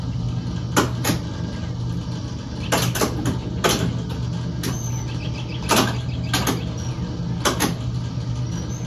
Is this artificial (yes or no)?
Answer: no